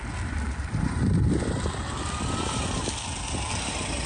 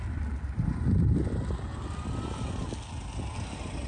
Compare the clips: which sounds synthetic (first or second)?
first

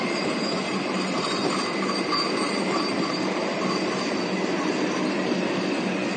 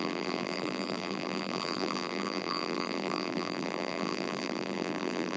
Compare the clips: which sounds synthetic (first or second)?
second